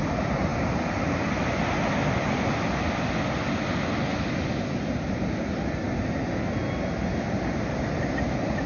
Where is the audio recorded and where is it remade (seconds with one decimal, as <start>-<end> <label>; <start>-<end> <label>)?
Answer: 0.0-8.7 recorded

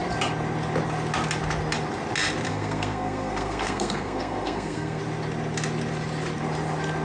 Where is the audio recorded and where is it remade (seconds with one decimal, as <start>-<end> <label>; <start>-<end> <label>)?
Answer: 0.0-2.5 recorded; 2.5-5.0 remade; 5.0-7.0 recorded